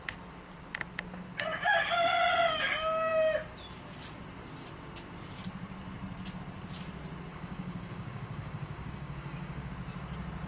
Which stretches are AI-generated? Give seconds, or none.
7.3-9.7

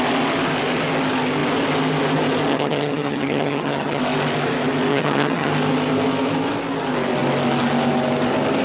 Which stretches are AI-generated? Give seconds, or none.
2.5-4.0; 4.9-5.5

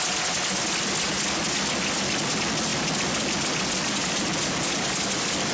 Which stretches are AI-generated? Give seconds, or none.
none

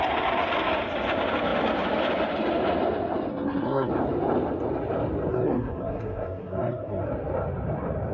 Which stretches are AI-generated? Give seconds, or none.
3.3-3.9; 5.3-7.0